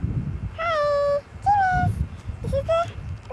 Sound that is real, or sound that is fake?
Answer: real